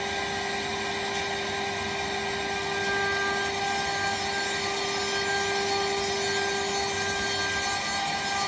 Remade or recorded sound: recorded